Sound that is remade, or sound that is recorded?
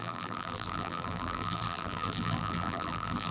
remade